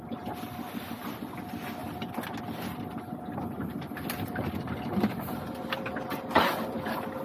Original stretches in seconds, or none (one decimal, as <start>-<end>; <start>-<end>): 0.0-7.2